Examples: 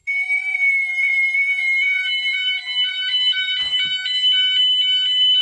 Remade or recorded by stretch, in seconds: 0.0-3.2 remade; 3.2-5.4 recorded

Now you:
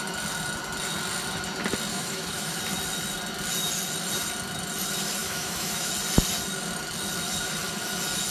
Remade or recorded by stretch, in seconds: 0.0-1.9 recorded; 1.9-2.6 remade; 2.6-5.2 recorded; 5.2-5.9 remade; 5.9-8.3 recorded

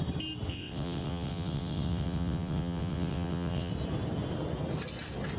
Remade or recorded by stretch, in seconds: 0.0-0.5 recorded; 0.5-3.7 remade; 3.7-5.4 recorded

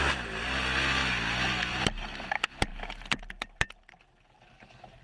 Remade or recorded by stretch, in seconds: 0.0-5.0 recorded

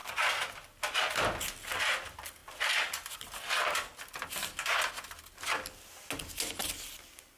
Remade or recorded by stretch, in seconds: 0.0-7.4 recorded

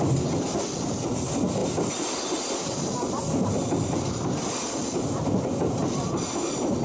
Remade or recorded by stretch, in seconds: 0.0-6.8 recorded